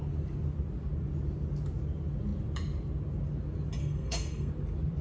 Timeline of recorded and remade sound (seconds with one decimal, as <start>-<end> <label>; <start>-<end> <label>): 0.0-3.8 recorded; 3.8-4.5 remade; 4.5-5.0 recorded